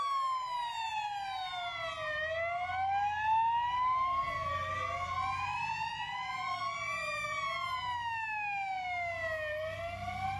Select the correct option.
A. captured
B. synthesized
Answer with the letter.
A